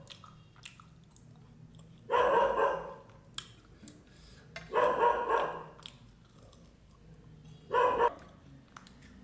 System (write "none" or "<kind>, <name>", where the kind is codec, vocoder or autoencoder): none